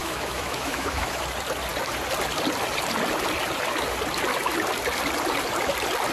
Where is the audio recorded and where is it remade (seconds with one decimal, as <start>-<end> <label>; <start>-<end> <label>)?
0.0-1.2 remade; 1.2-6.1 recorded